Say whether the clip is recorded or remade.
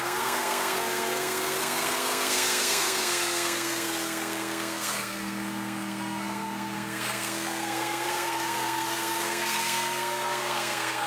remade